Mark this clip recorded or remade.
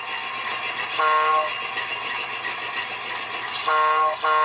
recorded